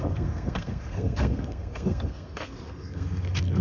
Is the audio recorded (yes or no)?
no